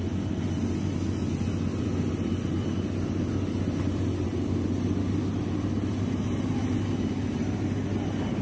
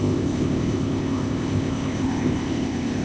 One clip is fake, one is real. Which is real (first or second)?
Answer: first